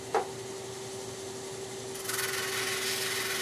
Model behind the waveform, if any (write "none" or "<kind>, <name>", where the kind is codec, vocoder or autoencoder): none